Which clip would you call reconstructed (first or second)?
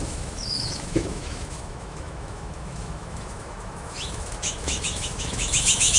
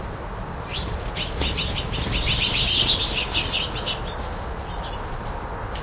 first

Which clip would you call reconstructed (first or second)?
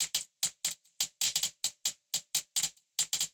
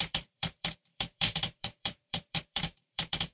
second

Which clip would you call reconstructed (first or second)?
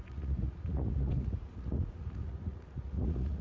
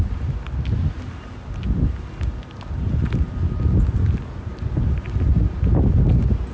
first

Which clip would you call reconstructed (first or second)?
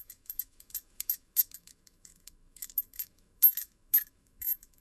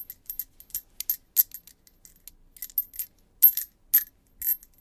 first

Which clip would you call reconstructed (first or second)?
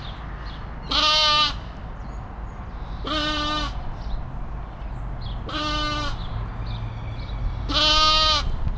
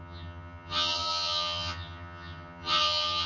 second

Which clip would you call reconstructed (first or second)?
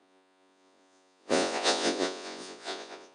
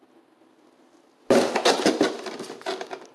first